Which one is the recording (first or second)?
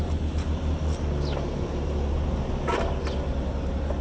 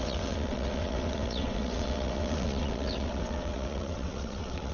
first